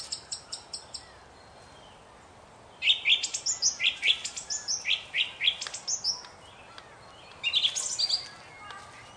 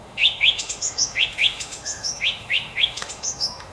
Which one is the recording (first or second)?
first